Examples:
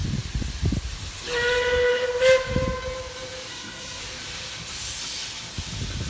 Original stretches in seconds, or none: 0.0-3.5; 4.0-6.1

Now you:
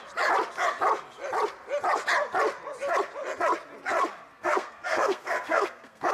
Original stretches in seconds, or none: 0.0-4.3

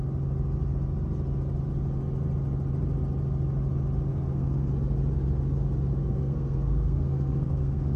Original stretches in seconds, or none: 0.0-4.1; 4.7-6.0